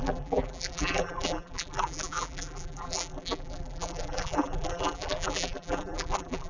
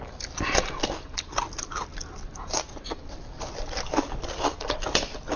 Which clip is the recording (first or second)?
second